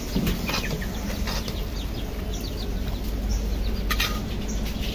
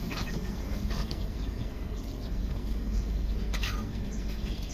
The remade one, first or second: second